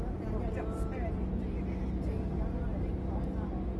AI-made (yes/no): no